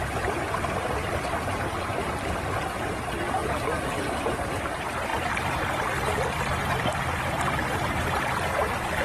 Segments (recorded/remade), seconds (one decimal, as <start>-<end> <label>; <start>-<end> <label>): 0.0-9.0 recorded